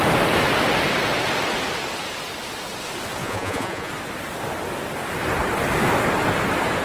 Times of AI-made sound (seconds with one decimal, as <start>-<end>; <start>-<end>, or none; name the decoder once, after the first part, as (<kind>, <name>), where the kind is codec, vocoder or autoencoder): 3.2-3.9 (vocoder, Vocos)